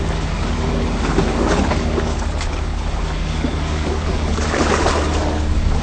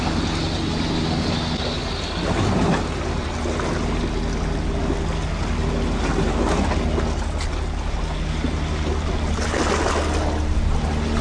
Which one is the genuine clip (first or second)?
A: second